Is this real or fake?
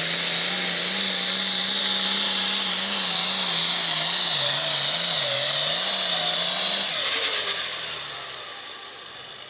real